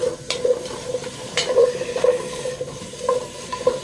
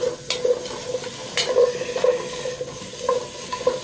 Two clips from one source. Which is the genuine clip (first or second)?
second